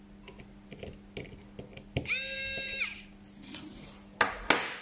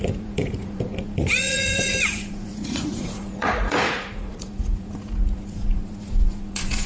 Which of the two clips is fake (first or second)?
second